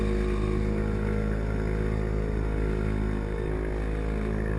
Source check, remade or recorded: recorded